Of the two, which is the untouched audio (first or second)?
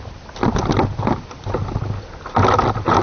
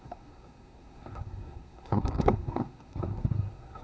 first